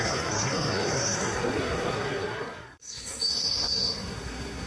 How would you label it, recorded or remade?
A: remade